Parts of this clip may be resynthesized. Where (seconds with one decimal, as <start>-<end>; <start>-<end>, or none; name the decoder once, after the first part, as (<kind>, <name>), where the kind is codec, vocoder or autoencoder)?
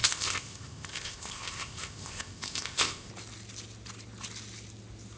0.0-3.1 (codec, ZipCodec)